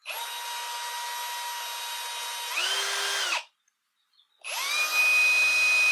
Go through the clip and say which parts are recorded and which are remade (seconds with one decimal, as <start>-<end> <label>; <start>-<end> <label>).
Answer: 0.0-5.9 recorded